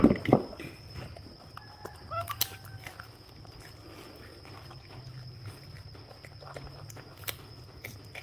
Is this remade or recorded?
remade